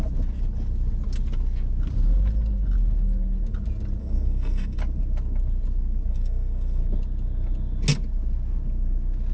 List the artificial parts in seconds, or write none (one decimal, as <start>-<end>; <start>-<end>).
4.0-4.8; 6.1-6.8